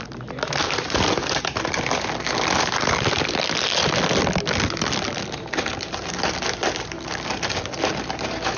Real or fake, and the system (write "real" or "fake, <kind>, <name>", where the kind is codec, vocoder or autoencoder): fake, vocoder, BigVGAN v2